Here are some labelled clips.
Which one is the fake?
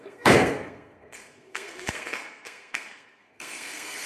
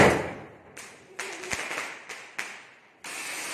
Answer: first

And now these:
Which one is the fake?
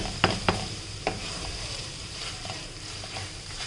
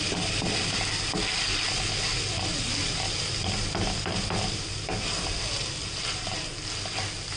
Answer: first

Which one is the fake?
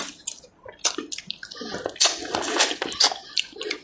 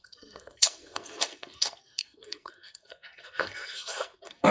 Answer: second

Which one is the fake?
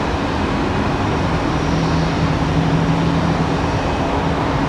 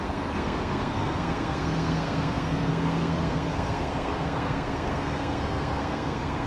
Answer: second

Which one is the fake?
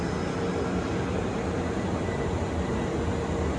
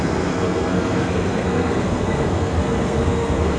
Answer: second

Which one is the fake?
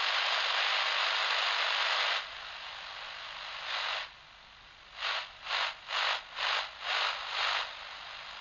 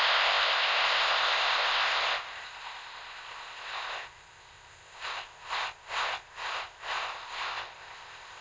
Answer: second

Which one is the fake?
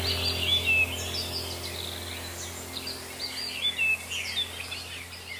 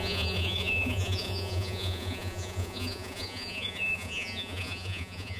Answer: second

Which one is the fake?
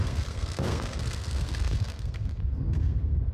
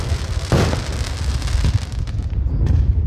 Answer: first